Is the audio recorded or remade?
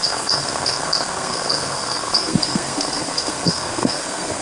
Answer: remade